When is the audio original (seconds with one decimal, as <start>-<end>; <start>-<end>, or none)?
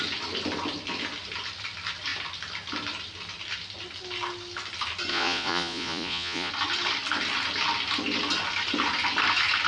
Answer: 0.0-5.1; 6.5-9.7